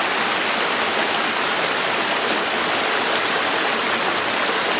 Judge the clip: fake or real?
real